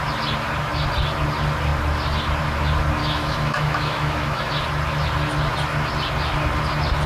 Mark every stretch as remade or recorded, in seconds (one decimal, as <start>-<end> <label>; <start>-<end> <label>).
0.0-3.0 recorded; 3.0-4.5 remade; 4.5-7.1 recorded